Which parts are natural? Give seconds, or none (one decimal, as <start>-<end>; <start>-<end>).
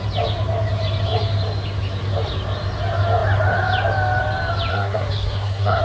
0.0-4.7